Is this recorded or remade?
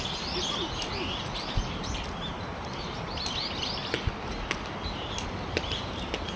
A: recorded